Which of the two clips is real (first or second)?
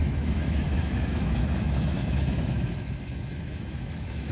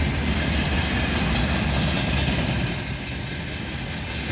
second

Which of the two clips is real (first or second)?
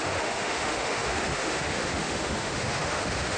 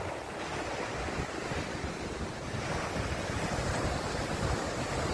second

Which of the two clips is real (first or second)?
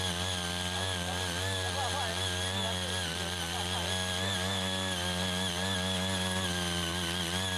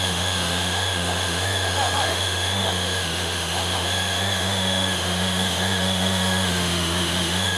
first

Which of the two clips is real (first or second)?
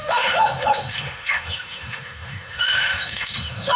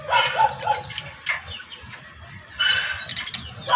second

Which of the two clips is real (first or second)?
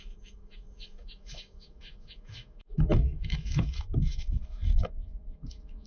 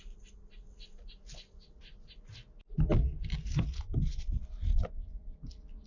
second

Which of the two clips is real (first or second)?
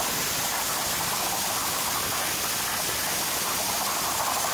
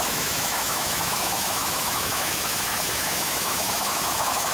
first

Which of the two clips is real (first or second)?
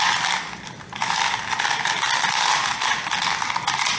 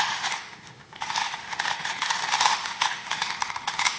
first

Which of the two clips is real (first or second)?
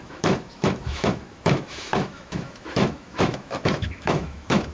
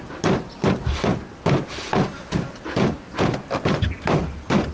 second